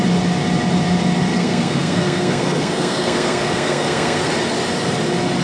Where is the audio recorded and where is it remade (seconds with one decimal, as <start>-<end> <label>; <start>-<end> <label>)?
0.0-1.3 recorded; 1.3-4.3 remade; 4.3-5.4 recorded